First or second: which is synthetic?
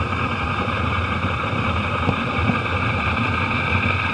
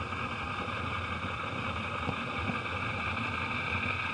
first